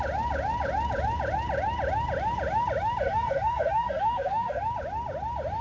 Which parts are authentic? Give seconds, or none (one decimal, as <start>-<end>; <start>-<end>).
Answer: 0.0-3.0; 4.6-5.6